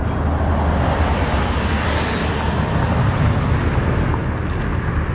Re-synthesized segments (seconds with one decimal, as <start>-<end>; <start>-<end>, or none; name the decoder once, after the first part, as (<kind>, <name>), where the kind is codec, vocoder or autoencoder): none